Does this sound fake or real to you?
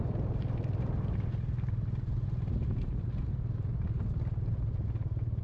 real